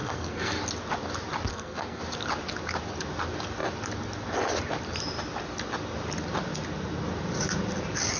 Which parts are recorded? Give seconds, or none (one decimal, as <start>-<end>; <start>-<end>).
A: 0.6-1.5; 2.0-8.2